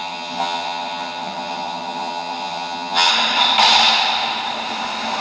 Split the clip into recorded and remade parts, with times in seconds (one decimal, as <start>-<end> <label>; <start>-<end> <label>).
0.0-3.1 remade; 3.1-5.2 recorded